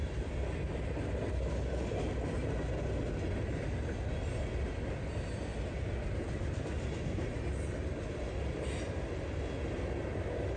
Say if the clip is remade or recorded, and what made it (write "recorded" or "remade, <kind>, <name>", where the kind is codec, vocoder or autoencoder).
recorded